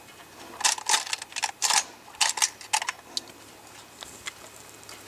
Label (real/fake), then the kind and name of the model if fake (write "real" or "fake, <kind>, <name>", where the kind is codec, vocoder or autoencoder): real